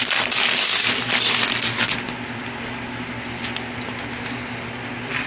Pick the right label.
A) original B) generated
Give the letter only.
A